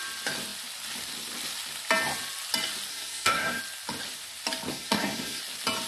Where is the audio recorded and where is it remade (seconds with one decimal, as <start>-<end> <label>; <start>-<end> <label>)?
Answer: 0.0-2.9 recorded; 2.9-3.6 remade; 3.6-4.7 recorded; 4.7-5.4 remade; 5.4-5.9 recorded

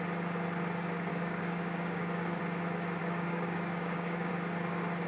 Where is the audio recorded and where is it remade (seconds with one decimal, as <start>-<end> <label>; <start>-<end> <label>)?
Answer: 0.0-1.1 recorded; 1.1-2.4 remade; 2.4-3.0 recorded; 3.0-4.3 remade; 4.3-5.1 recorded

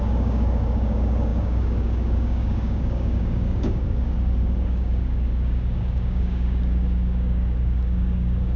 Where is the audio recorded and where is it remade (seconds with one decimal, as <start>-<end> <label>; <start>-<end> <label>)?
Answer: 0.0-8.6 remade

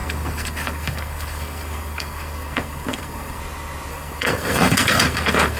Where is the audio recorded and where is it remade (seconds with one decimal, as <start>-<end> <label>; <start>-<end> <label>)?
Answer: 0.0-3.4 remade; 3.4-3.9 recorded; 3.9-5.6 remade

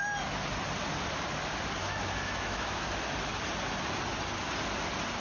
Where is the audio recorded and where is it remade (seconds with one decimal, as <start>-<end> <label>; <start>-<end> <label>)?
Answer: 0.0-1.8 recorded; 1.8-2.8 remade; 2.8-5.2 recorded

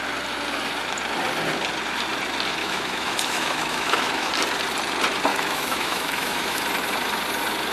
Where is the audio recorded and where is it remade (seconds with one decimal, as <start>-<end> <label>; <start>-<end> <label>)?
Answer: 0.0-2.6 recorded; 2.6-4.3 remade; 4.3-5.3 recorded; 5.3-6.6 remade; 6.6-7.7 recorded

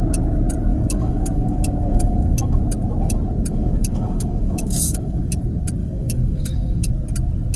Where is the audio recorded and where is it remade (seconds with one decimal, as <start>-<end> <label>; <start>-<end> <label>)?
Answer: 0.0-0.7 recorded; 0.7-2.6 remade; 2.6-3.5 recorded; 3.5-5.3 remade; 5.3-5.8 recorded; 5.8-6.9 remade; 6.9-7.6 recorded

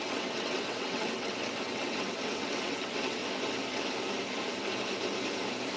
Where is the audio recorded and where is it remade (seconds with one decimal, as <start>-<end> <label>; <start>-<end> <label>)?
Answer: 0.0-3.2 remade; 3.2-5.8 recorded